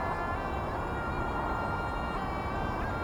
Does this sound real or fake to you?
real